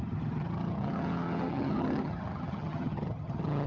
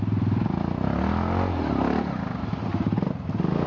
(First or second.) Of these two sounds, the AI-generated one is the first